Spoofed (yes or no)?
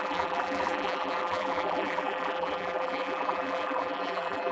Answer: yes